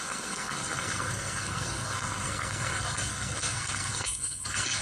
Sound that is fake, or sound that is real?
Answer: fake